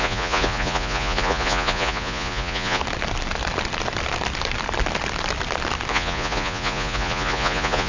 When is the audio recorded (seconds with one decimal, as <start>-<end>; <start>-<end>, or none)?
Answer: 2.8-5.9